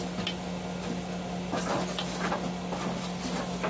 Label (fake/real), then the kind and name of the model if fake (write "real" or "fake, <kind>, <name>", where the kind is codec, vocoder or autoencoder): real